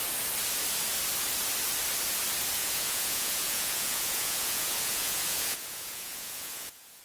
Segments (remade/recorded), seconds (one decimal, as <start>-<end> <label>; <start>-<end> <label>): 0.0-2.6 recorded; 2.6-7.0 remade